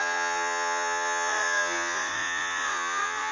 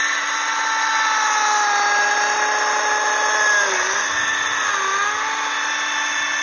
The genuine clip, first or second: second